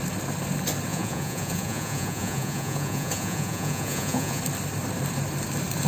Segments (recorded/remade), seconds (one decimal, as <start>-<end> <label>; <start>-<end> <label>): 0.0-0.9 recorded; 0.9-4.4 remade; 4.4-5.9 recorded